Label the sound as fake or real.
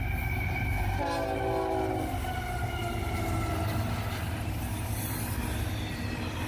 real